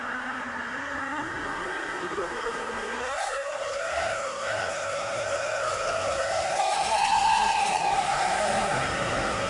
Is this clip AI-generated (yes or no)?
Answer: yes